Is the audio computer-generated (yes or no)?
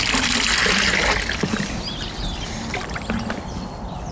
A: no